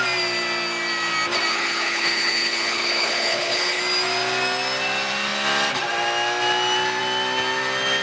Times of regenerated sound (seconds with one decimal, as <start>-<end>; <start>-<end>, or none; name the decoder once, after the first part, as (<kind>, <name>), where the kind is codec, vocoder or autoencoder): 1.5-3.8 (codec, HILCodec)